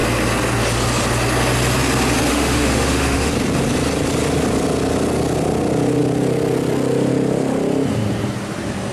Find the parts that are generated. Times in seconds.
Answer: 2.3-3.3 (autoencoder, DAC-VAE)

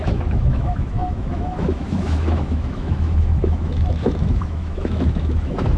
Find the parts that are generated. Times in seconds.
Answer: 0.0-5.8 (autoencoder, DAC-VAE)

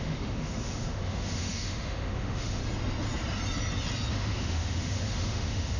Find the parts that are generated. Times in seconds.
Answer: 0.0-2.6 (autoencoder, DAC-VAE); 4.1-5.8

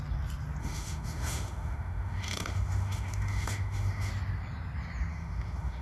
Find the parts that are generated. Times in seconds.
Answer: 0.6-4.1 (autoencoder, DAC-VAE); 5.1-5.8